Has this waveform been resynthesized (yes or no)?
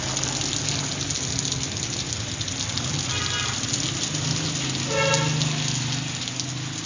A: no